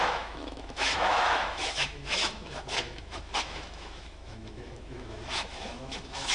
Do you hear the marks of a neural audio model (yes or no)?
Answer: yes